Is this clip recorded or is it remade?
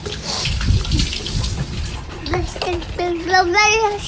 recorded